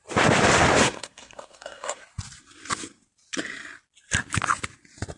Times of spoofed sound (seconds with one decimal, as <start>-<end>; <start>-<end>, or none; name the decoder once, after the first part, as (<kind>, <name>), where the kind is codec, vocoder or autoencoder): 0.8-2.0 (codec, SNAC)